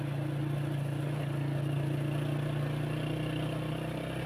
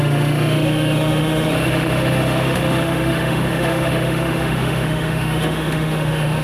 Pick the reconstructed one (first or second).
second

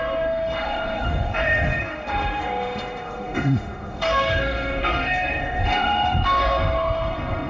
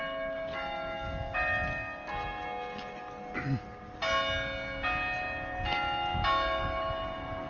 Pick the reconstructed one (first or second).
first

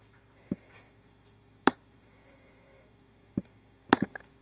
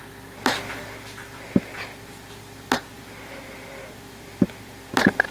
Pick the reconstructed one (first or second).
first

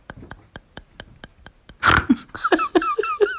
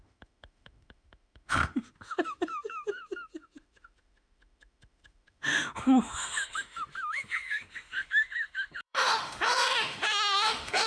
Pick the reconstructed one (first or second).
second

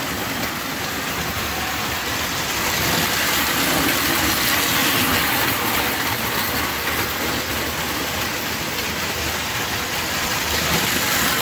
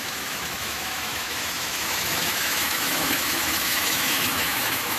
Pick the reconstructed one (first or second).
second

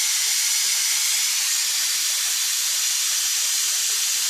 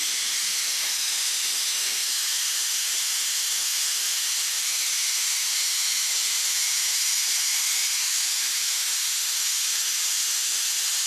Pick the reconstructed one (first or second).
second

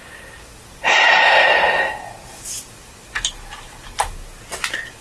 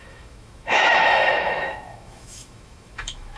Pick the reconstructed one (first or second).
second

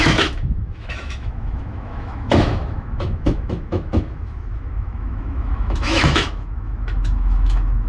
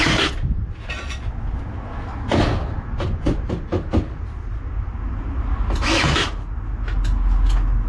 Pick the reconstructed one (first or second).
first